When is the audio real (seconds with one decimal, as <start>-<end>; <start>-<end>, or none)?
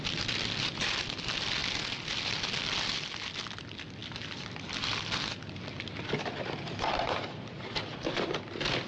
0.0-8.9